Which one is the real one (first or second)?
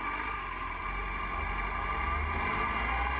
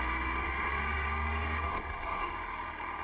first